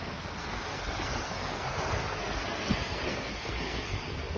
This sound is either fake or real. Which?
fake